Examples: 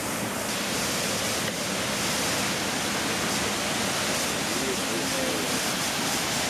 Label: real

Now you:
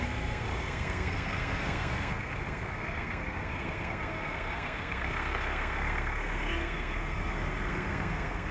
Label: fake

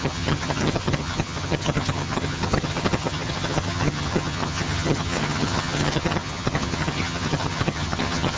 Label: fake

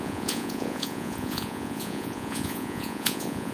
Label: fake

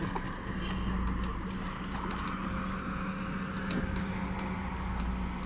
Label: real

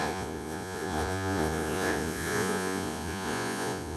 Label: fake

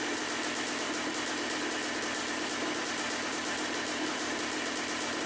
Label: real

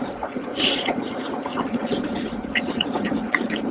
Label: fake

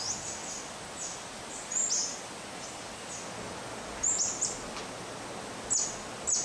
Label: real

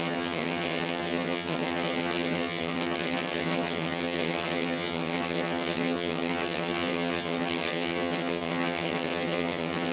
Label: fake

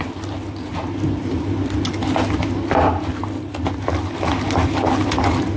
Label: real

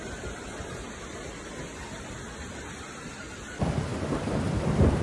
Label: fake